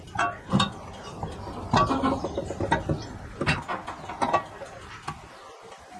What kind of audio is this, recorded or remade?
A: recorded